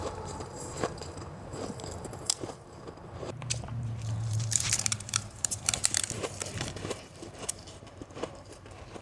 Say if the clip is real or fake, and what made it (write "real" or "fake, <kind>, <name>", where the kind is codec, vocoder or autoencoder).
fake, vocoder, BigVGAN v2